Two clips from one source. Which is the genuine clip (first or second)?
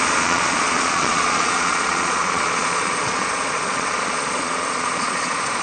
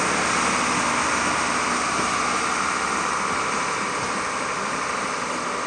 second